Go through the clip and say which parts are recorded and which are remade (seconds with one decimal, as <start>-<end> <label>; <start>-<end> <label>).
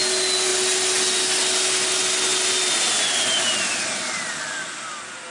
0.0-5.3 recorded